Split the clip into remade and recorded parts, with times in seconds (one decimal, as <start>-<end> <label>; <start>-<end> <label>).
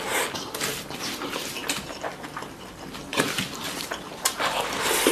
0.0-1.6 recorded; 1.6-2.7 remade; 2.7-3.1 recorded; 3.1-5.1 remade